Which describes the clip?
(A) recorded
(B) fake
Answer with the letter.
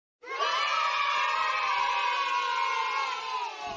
A